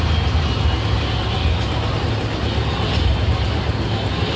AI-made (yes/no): no